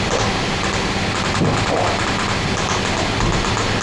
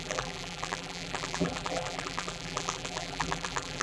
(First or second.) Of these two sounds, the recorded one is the first